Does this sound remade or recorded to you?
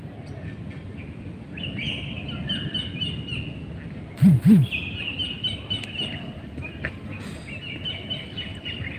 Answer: recorded